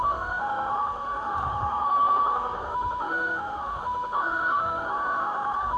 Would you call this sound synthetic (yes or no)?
yes